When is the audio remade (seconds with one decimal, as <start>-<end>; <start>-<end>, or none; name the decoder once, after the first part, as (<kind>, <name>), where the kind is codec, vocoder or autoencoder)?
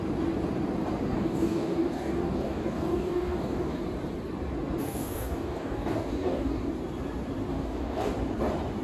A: 1.0-3.8 (codec, DAC); 4.8-6.7; 7.5-8.1